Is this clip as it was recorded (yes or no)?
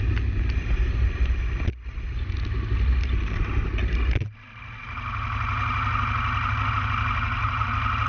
yes